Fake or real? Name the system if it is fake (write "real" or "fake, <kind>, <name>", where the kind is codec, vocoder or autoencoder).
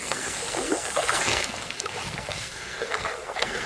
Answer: fake, codec, SNAC